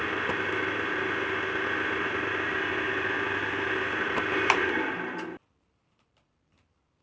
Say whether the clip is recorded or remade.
remade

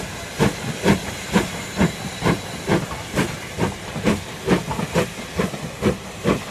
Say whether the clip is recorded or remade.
recorded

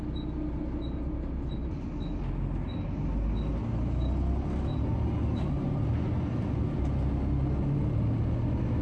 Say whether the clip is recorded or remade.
recorded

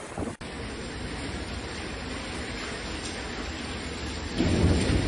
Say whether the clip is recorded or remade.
recorded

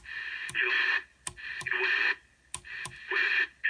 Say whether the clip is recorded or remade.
recorded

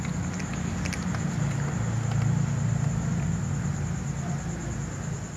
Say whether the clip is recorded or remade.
recorded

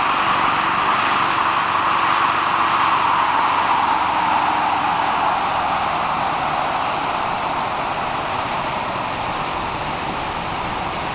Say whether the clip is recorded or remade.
recorded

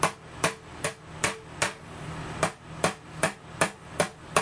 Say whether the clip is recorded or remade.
recorded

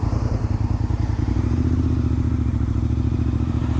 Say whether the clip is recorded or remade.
remade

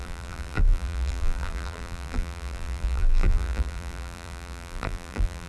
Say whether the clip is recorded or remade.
remade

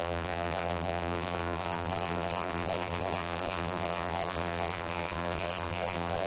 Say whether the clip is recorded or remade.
remade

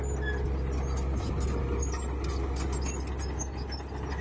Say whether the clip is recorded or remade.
recorded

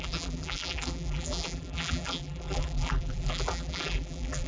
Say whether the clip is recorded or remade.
remade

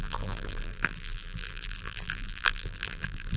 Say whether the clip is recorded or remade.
remade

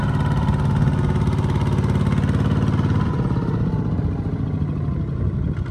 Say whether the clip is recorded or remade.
recorded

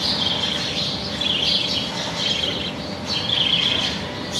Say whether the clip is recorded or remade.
recorded